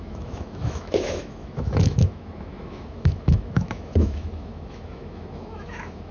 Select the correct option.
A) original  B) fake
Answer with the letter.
B